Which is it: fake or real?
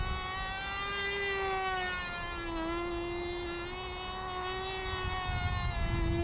real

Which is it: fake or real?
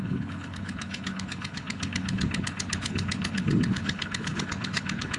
fake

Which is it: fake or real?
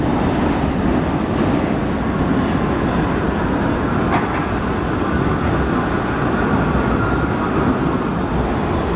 real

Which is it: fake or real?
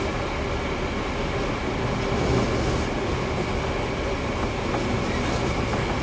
real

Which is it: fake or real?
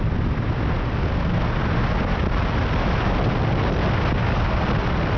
real